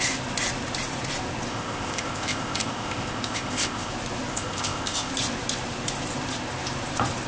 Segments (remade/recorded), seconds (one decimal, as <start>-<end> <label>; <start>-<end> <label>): 0.0-1.5 recorded; 1.5-3.9 remade; 3.9-4.3 recorded; 4.3-5.1 remade; 5.1-7.3 recorded